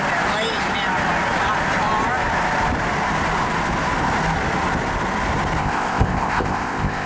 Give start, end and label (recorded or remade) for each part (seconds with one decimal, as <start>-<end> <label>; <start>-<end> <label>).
0.0-5.6 recorded; 5.6-7.1 remade